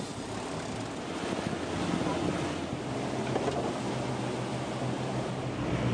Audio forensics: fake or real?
real